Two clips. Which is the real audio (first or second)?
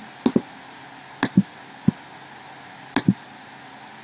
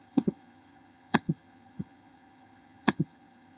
first